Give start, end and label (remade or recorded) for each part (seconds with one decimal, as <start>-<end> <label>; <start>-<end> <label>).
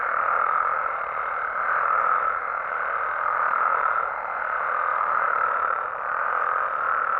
0.0-4.9 recorded; 4.9-6.3 remade; 6.3-7.2 recorded